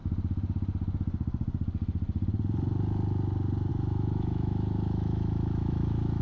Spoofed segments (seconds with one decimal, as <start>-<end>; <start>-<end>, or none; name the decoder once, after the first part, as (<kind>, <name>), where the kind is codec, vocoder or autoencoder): 3.7-6.2 (autoencoder, DAC-VAE)